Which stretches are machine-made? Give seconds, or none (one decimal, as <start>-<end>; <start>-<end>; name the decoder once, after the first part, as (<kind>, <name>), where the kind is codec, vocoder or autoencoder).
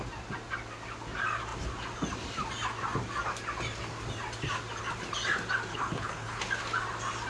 5.7-6.4 (codec, HILCodec)